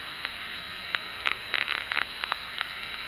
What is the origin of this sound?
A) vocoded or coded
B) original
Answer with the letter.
A